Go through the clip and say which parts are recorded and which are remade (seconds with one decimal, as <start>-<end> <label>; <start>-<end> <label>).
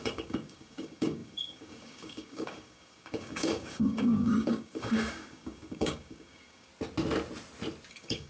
0.0-6.7 remade; 6.7-7.9 recorded; 7.9-8.3 remade